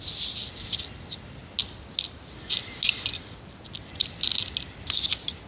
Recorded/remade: recorded